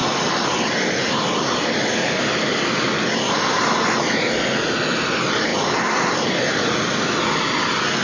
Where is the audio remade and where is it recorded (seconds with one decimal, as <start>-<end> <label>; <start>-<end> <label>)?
0.0-4.8 remade; 4.8-5.5 recorded; 5.5-6.5 remade; 6.5-8.0 recorded